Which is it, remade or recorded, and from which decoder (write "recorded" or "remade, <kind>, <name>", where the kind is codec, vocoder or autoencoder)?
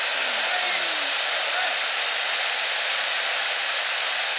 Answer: recorded